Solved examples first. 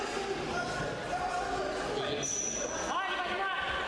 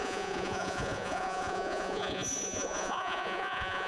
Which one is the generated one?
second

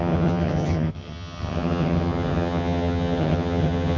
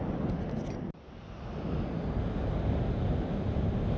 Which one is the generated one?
first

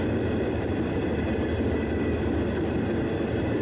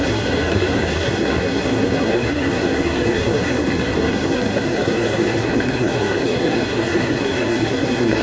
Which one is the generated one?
second